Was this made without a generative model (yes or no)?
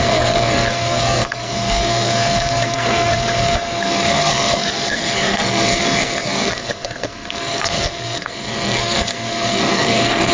no